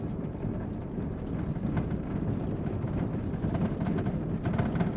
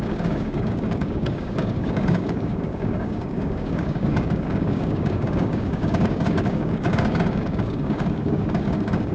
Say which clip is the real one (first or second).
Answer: first